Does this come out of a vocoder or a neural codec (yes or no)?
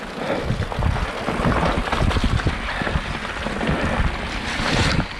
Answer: no